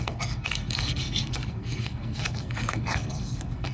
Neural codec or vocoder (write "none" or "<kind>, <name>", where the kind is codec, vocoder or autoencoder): codec, SNAC